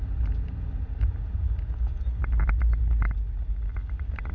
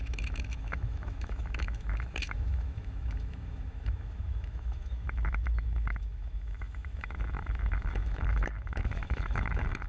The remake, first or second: second